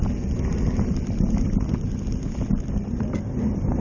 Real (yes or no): yes